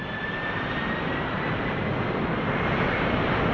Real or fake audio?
real